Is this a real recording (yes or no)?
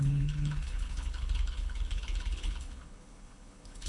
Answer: no